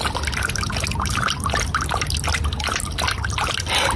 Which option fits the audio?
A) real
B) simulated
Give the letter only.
A